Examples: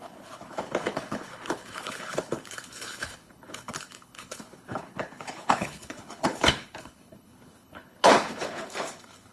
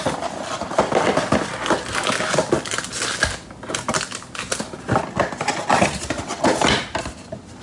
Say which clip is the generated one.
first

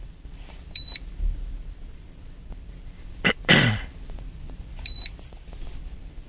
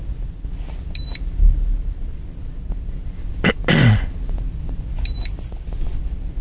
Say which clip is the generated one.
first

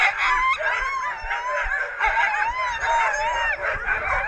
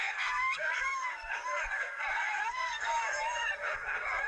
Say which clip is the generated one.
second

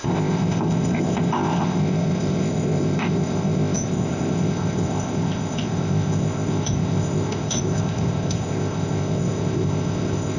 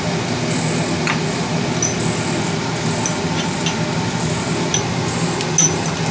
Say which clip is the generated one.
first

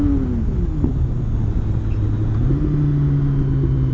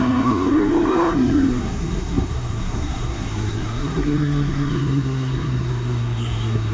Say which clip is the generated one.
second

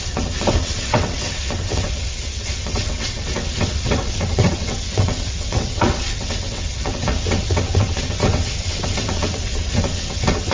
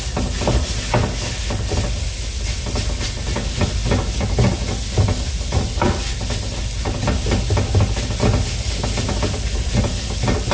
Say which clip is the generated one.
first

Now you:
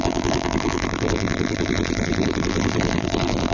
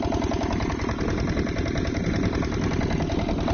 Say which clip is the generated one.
first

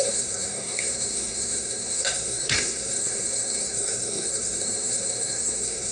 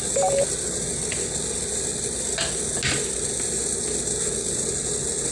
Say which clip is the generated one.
first